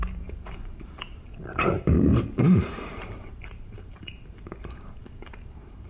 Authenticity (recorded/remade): remade